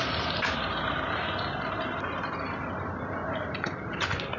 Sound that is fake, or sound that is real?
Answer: real